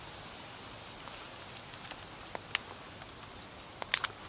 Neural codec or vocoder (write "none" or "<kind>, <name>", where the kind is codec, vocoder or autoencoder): none